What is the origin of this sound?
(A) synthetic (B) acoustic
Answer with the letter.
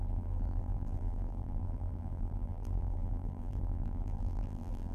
A